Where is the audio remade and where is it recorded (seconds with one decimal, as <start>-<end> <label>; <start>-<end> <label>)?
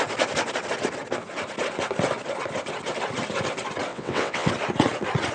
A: 0.0-3.9 recorded; 3.9-4.5 remade; 4.5-5.3 recorded